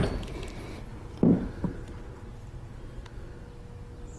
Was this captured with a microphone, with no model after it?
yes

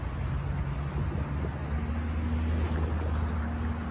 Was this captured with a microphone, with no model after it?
yes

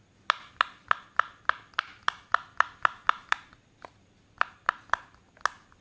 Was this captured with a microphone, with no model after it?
yes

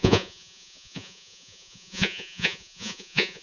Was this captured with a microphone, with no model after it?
no